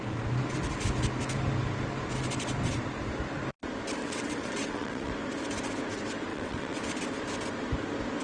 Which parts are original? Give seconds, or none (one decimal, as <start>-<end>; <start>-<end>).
0.0-4.0; 5.1-6.3; 6.8-8.2